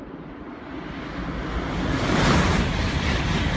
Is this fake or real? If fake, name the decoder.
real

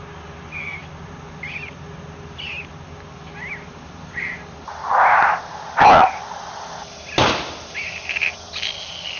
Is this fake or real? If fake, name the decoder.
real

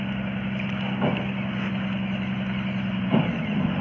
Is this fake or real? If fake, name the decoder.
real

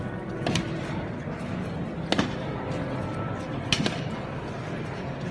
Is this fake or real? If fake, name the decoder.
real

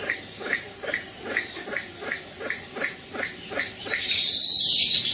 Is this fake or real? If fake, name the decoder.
real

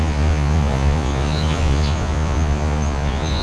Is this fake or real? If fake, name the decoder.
fake, vocoder, Vocos